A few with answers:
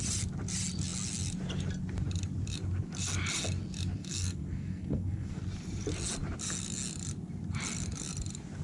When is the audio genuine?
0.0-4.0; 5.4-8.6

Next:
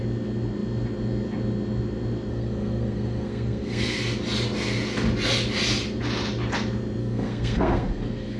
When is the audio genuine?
0.0-2.3; 4.0-7.0

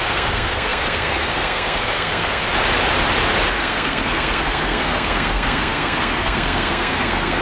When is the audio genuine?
2.4-3.5

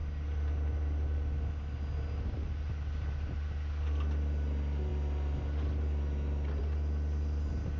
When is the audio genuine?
0.0-7.8